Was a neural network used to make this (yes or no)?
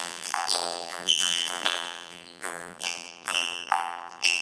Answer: yes